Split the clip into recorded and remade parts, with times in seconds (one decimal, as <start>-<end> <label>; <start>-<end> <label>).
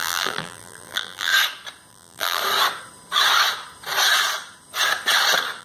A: 0.0-1.3 remade; 1.3-1.9 recorded; 1.9-2.4 remade; 2.4-5.6 recorded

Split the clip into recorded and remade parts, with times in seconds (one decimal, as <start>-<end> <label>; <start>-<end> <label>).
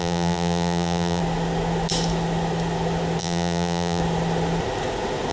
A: 0.0-1.2 remade; 1.2-3.2 recorded; 3.2-4.0 remade; 4.0-5.3 recorded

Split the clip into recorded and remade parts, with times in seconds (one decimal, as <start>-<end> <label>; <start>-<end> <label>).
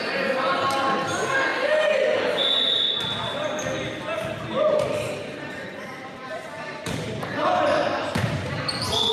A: 0.0-1.5 remade; 1.5-4.6 recorded; 4.6-9.1 remade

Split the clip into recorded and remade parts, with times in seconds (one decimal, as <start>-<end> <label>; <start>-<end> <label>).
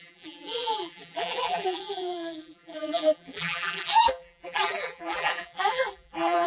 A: 0.0-6.5 remade